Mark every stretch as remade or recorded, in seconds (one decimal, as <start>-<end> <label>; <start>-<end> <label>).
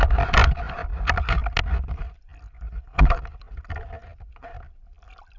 0.0-5.4 recorded